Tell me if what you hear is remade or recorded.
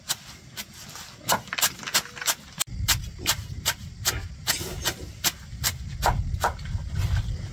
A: recorded